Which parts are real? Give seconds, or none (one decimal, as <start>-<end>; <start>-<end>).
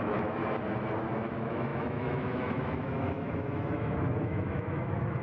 0.4-1.0